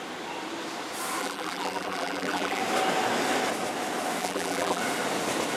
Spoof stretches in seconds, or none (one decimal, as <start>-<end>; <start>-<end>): 1.2-2.6; 4.2-4.8